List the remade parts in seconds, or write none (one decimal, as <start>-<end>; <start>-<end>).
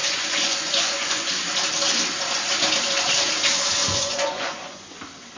0.0-1.3; 3.8-5.0